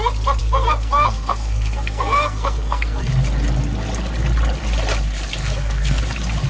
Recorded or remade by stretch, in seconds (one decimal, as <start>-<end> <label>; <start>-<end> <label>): 0.0-0.4 recorded; 0.4-3.1 remade; 3.1-5.4 recorded; 5.4-6.0 remade; 6.0-6.5 recorded